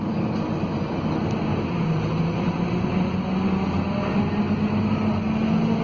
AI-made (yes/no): no